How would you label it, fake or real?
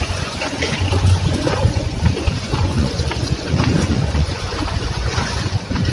fake